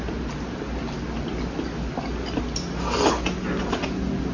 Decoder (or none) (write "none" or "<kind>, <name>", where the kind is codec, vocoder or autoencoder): none